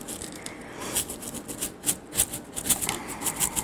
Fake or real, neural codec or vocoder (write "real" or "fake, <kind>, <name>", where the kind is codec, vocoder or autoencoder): real